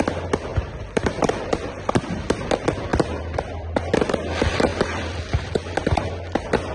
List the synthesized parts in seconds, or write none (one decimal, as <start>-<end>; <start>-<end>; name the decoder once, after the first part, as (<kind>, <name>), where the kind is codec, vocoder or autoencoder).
0.5-1.9 (vocoder, BigVGAN v2); 2.9-4.1; 4.7-6.1